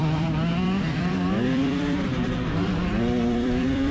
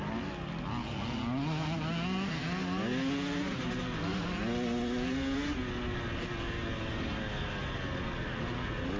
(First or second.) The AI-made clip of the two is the first